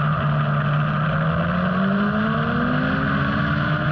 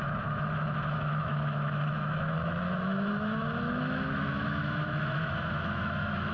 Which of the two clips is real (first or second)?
first